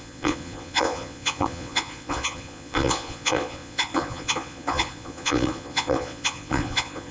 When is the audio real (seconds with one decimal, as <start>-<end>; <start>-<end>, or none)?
none